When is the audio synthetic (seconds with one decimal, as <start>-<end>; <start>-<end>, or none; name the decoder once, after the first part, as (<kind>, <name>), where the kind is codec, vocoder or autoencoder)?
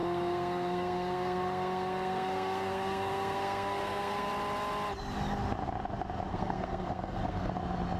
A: 0.0-4.3 (codec, SNAC); 6.3-7.5